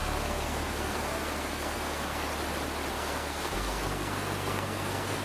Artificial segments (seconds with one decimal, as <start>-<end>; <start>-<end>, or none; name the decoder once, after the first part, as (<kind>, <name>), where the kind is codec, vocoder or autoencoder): 0.0-2.3 (codec, SNAC); 2.9-5.2